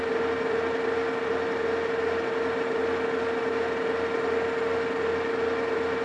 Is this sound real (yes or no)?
yes